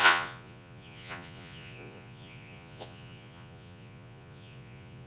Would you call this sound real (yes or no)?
no